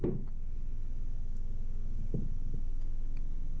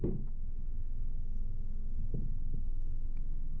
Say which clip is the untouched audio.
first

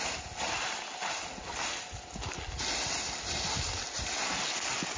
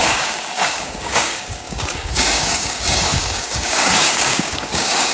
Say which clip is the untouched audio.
first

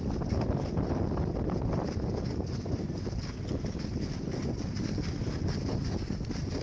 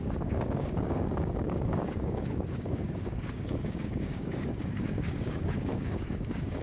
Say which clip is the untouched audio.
first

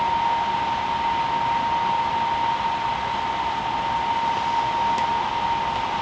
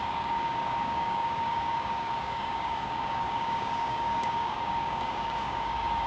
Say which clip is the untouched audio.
first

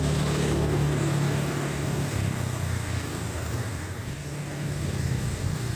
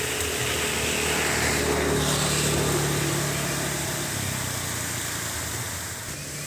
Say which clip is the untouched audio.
second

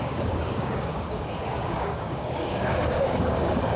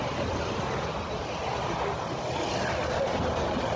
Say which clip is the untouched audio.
second